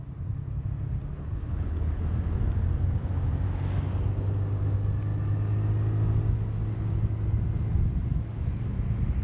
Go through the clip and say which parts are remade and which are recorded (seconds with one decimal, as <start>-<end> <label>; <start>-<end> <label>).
0.0-1.1 recorded; 1.1-2.0 remade; 2.0-9.2 recorded

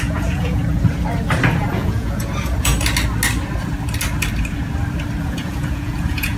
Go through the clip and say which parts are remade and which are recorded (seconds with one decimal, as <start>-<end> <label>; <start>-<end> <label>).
0.0-0.6 remade; 0.6-1.6 recorded; 1.6-2.7 remade; 2.7-5.2 recorded; 5.2-6.4 remade

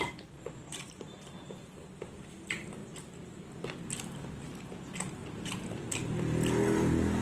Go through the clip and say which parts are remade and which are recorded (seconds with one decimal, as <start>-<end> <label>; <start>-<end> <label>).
0.0-0.7 recorded; 0.7-1.4 remade; 1.4-2.8 recorded; 2.8-3.5 remade; 3.5-5.2 recorded; 5.2-5.9 remade; 5.9-7.2 recorded

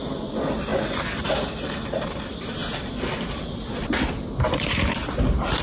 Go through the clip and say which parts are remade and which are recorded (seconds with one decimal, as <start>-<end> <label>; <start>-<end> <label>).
0.0-5.6 recorded